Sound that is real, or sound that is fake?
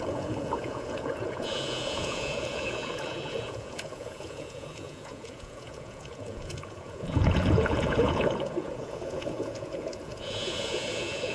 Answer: fake